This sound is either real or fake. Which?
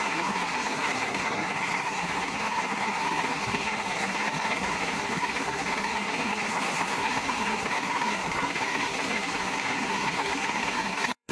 fake